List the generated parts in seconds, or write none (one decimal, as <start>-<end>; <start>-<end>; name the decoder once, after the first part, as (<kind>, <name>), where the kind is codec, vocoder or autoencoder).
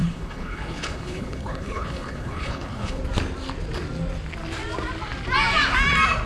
0.0-3.0 (codec, HILCodec)